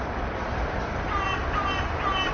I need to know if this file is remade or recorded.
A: recorded